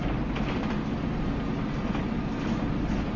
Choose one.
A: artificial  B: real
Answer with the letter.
B